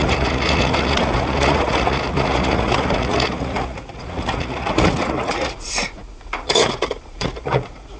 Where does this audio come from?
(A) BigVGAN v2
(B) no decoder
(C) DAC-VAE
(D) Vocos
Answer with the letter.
D